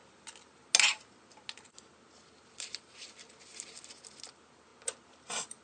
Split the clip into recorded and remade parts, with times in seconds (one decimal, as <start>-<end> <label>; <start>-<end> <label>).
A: 0.0-5.6 recorded